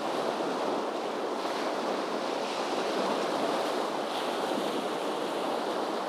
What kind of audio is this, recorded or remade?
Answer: recorded